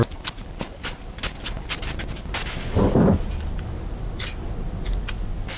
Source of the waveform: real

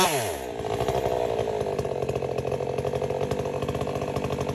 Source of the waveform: real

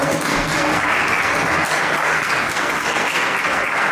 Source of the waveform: fake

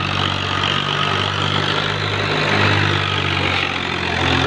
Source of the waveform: real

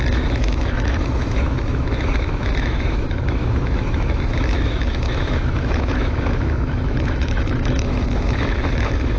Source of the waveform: fake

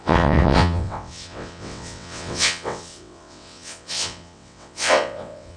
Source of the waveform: fake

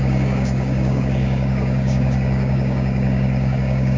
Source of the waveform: fake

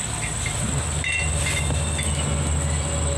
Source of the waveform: real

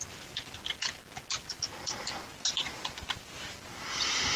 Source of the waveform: real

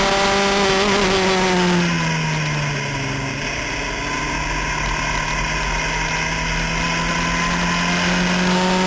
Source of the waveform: real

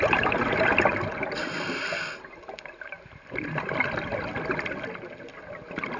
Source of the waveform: real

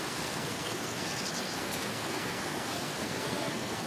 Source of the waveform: fake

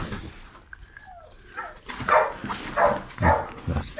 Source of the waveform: real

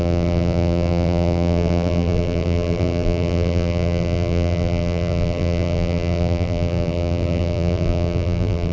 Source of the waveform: fake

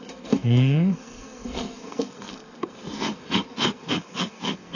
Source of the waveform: fake